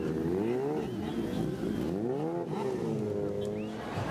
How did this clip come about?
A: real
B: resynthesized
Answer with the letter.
A